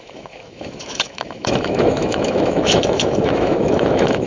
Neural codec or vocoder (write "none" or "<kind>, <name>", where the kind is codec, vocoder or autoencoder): autoencoder, DAC-VAE